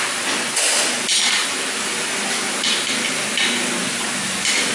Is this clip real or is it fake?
real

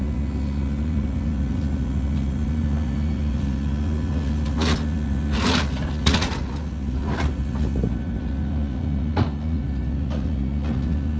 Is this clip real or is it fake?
fake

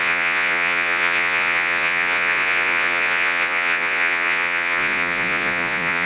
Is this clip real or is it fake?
fake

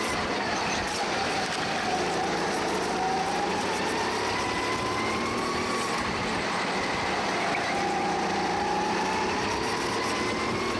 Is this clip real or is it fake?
real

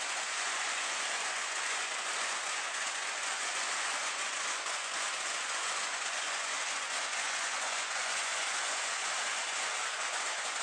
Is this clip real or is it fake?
fake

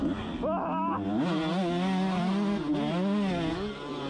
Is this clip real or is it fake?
real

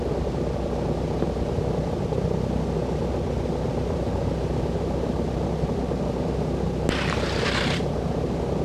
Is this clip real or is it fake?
real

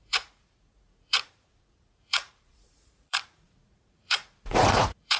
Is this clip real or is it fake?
fake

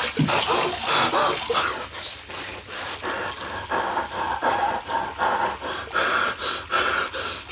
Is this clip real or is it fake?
real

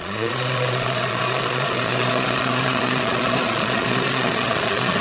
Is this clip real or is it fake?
fake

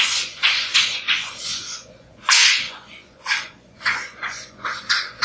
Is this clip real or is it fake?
fake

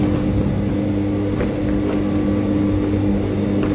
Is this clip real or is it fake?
real